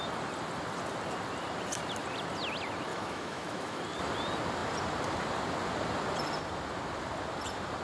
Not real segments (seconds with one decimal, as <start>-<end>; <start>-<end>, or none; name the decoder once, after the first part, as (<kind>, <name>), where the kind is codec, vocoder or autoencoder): 2.9-3.8 (autoencoder, DAC-VAE)